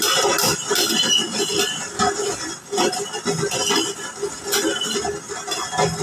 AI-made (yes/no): no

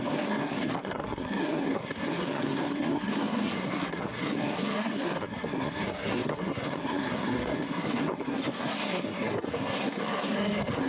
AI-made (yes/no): yes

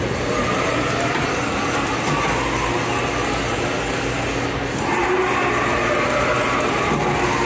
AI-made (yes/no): no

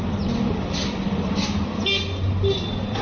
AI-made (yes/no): no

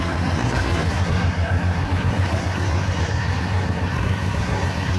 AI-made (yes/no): yes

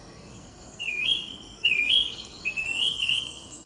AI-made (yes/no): yes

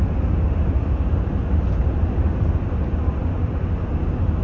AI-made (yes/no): no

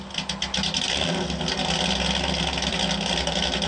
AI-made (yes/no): no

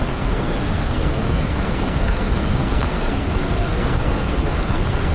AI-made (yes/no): yes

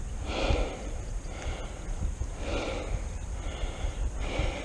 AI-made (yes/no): no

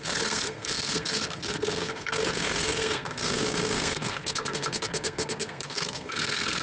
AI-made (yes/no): yes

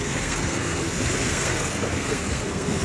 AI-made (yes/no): yes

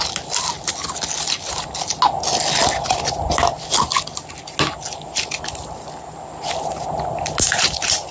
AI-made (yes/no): no